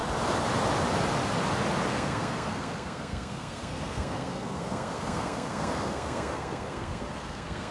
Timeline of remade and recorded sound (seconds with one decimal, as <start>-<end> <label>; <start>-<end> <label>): 0.0-1.9 recorded; 1.9-7.7 remade